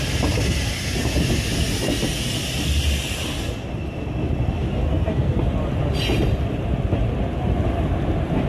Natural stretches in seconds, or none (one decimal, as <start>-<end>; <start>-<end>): 0.0-4.7; 5.4-8.5